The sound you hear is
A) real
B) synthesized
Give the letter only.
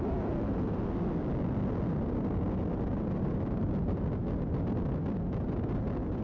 A